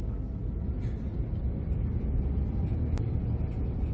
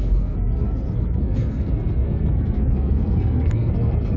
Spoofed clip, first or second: second